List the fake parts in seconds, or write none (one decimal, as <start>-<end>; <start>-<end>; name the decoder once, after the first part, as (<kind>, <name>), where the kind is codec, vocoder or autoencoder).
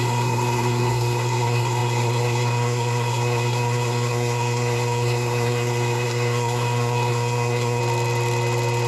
0.0-7.8 (codec, SNAC)